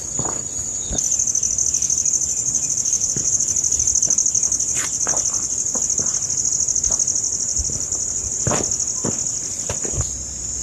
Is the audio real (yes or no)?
yes